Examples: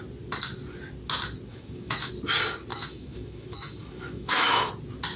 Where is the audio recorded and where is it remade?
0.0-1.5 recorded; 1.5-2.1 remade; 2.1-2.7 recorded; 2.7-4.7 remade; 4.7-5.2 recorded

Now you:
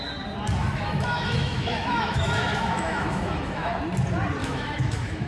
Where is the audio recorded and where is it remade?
0.0-0.6 recorded; 0.6-3.8 remade; 3.8-4.4 recorded; 4.4-5.3 remade

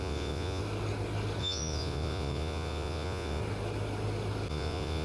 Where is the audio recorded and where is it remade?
0.0-0.6 remade; 0.6-1.4 recorded; 1.4-3.4 remade; 3.4-4.5 recorded; 4.5-5.0 remade

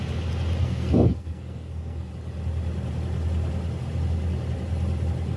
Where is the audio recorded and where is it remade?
0.0-0.6 recorded; 0.6-2.1 remade; 2.1-5.4 recorded

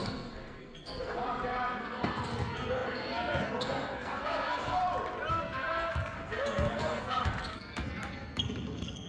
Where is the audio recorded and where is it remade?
0.0-1.2 remade; 1.2-1.8 recorded; 1.8-4.8 remade; 4.8-5.3 recorded; 5.3-9.1 remade

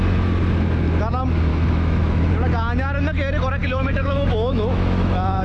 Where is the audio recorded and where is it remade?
0.0-1.5 recorded; 1.5-2.3 remade; 2.3-3.6 recorded; 3.6-5.4 remade